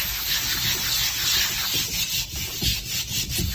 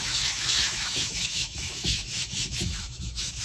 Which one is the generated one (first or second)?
second